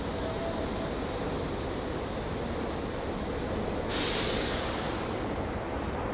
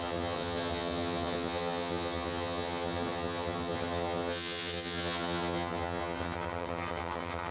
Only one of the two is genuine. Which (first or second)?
first